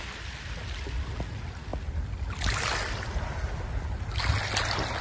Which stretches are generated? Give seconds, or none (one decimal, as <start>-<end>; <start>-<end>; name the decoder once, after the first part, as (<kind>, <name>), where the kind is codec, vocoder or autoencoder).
none